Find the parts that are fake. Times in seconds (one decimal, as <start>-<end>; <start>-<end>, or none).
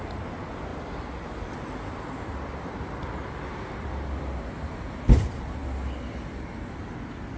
none